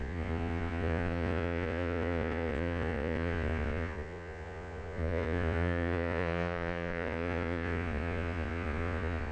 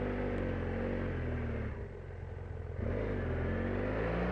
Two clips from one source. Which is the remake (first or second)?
first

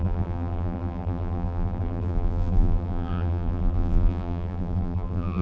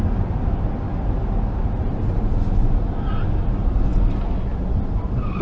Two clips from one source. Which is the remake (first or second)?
first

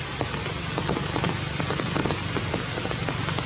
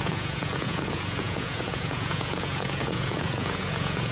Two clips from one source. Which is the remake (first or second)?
second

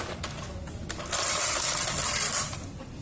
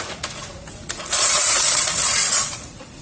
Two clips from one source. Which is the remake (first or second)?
second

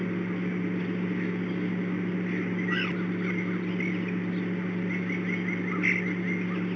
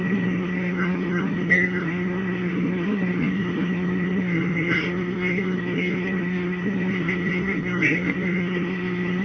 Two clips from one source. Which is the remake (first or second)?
second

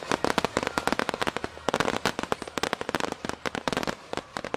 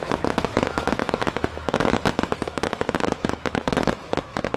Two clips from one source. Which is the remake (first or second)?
second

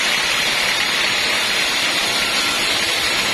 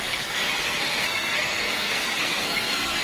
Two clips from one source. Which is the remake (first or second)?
second